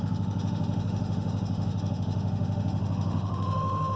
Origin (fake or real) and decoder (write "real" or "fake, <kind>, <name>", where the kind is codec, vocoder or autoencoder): fake, autoencoder, DAC-VAE